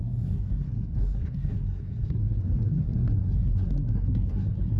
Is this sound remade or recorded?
remade